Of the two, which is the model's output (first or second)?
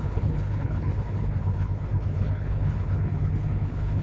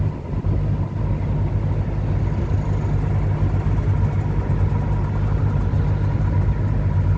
first